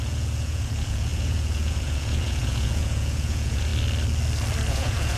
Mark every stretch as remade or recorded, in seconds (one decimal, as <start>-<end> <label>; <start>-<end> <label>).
0.0-3.7 remade; 3.7-4.7 recorded; 4.7-5.2 remade